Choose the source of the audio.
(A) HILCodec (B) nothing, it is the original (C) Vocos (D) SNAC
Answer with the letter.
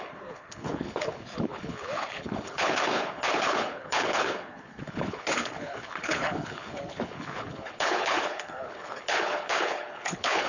A